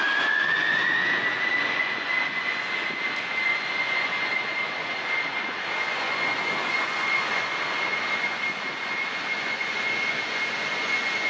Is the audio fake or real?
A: fake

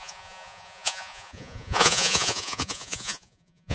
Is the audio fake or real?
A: fake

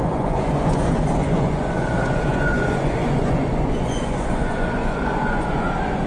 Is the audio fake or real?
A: fake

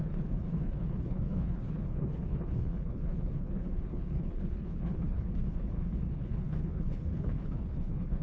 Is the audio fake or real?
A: fake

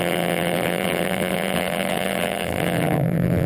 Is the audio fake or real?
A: fake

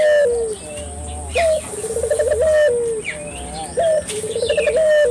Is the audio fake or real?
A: real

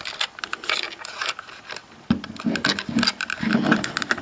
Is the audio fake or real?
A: real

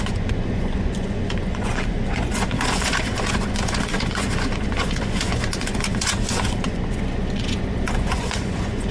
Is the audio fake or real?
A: fake